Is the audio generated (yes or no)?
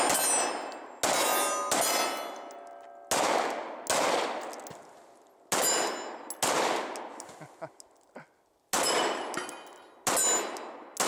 no